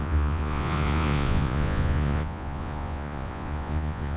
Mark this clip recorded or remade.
remade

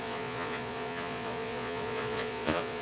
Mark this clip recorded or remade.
remade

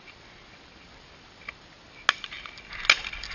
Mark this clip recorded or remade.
recorded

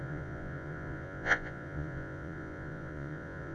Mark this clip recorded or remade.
remade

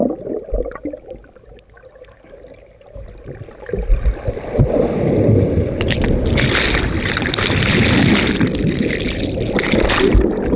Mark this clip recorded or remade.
recorded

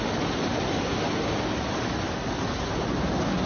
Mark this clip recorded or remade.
recorded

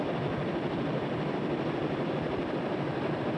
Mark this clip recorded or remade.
recorded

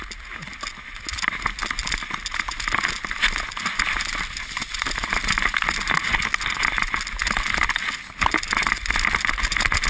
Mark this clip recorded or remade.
recorded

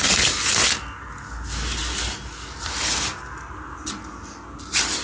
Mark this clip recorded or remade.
recorded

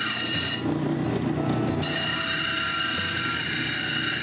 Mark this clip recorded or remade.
recorded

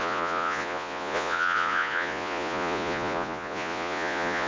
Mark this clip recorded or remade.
remade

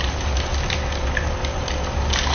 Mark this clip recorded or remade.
recorded